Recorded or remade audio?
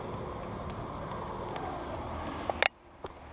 recorded